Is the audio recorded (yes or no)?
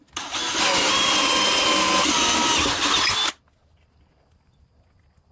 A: yes